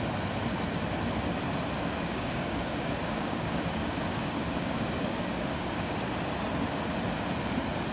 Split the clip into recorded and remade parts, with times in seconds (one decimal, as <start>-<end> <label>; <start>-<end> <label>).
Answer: 0.0-1.8 recorded; 1.8-5.9 remade; 5.9-7.9 recorded